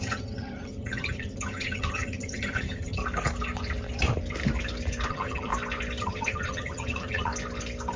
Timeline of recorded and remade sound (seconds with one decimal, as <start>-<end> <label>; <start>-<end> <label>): 0.0-3.0 remade; 3.0-5.1 recorded; 5.1-5.5 remade; 5.5-6.0 recorded; 6.0-7.3 remade; 7.3-8.0 recorded

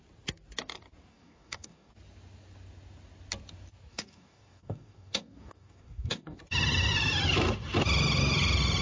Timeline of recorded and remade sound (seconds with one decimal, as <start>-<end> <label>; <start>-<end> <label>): 0.0-1.1 recorded; 1.1-1.9 remade; 1.9-3.9 recorded; 3.9-6.4 remade; 6.4-8.8 recorded

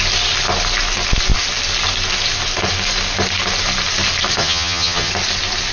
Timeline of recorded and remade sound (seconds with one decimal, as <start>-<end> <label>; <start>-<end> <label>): 0.0-4.4 recorded; 4.4-5.1 remade; 5.1-5.7 recorded

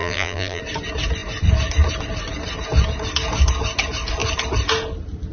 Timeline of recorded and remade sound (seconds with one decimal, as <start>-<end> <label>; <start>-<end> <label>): 0.0-0.6 remade; 0.6-5.3 recorded

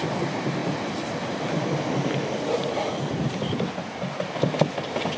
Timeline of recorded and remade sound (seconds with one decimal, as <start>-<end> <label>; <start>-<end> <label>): 0.0-5.2 recorded